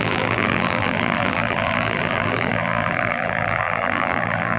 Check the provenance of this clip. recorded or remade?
remade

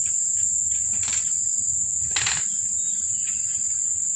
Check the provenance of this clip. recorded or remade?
recorded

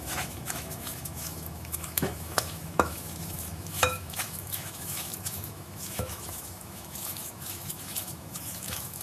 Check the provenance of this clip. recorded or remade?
remade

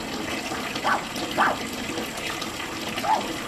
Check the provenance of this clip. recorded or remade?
recorded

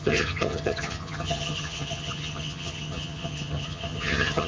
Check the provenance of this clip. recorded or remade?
remade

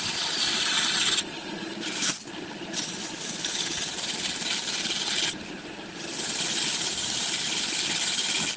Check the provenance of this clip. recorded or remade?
recorded